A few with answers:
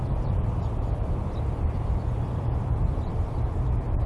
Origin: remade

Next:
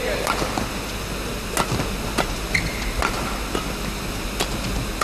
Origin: recorded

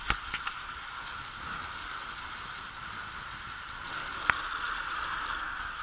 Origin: recorded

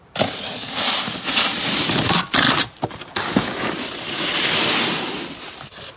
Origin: recorded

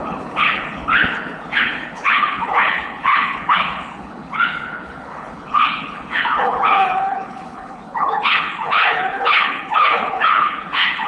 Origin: remade